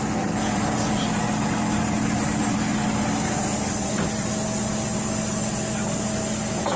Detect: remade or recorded recorded